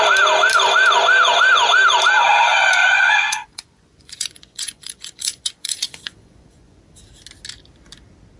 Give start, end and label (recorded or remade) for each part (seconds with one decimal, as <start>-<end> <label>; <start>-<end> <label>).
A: 0.0-2.8 recorded; 2.8-6.8 remade; 6.8-8.4 recorded